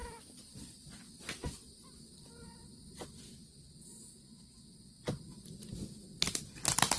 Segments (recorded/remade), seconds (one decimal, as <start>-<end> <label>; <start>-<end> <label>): 0.0-7.0 recorded